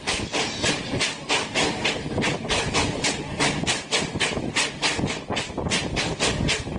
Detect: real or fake real